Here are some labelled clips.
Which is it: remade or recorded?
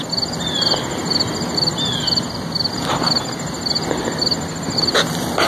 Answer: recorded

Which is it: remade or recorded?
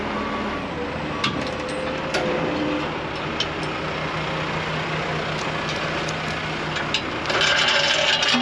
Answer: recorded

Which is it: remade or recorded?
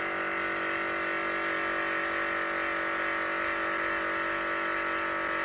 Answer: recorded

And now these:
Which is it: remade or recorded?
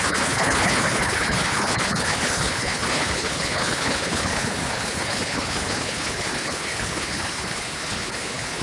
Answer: remade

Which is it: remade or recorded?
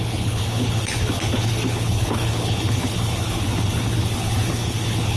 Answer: remade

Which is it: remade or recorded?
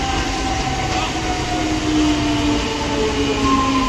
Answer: recorded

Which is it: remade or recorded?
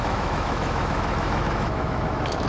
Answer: remade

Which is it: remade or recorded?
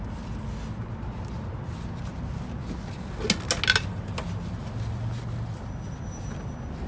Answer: recorded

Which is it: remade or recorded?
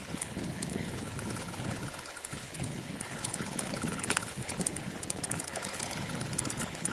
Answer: remade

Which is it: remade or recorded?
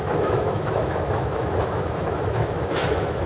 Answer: remade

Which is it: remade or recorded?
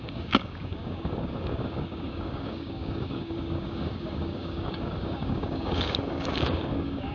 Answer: remade